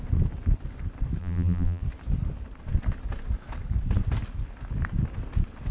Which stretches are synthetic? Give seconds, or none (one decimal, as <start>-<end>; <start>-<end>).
1.2-1.8